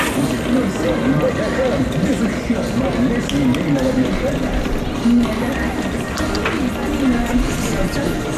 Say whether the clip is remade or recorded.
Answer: recorded